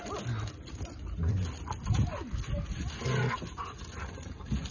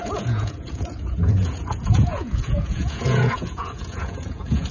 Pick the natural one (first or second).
first